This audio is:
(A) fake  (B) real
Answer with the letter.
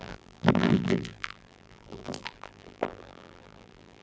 A